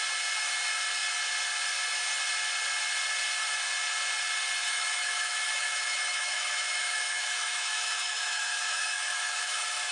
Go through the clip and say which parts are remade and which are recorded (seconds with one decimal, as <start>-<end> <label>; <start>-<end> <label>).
0.0-4.6 recorded; 4.6-9.9 remade